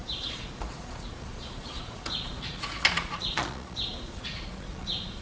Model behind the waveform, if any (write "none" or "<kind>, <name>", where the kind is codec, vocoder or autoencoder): vocoder, Vocos